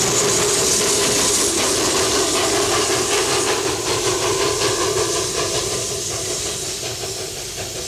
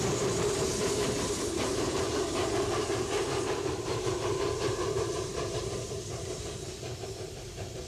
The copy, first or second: second